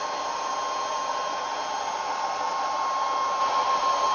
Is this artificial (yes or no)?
no